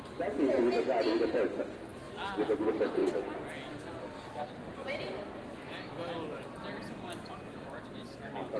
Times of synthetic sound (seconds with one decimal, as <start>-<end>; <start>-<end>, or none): 4.0-4.5